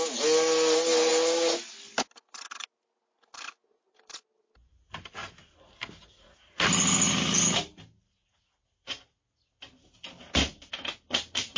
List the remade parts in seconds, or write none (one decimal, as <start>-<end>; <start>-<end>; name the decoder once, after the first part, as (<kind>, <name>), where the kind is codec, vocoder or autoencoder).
none